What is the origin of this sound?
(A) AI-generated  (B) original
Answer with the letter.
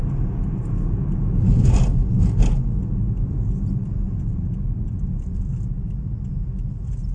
B